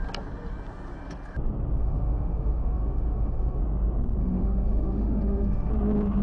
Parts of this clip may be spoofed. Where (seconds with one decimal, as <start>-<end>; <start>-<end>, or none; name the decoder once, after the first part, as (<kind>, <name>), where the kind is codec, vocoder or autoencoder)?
1.8-3.6 (autoencoder, DAC-VAE); 4.2-5.7